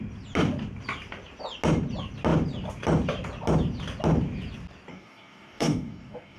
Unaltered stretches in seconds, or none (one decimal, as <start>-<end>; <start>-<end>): 0.0-4.9